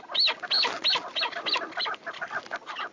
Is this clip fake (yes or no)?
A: no